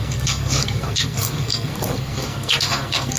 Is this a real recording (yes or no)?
no